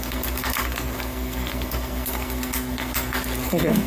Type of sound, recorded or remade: remade